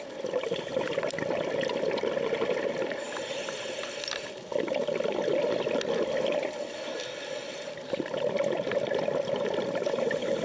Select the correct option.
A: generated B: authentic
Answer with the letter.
B